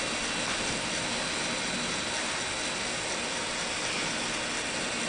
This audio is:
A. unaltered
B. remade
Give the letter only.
A